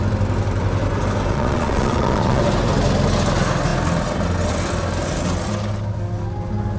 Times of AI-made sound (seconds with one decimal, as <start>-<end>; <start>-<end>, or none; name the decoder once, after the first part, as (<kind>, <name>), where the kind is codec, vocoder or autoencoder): 1.3-2.4 (vocoder, Vocos)